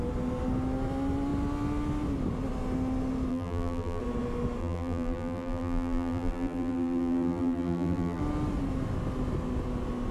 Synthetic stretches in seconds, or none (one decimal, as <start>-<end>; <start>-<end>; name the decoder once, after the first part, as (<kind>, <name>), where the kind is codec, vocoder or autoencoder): 3.3-4.0 (vocoder, BigVGAN v2); 4.6-8.2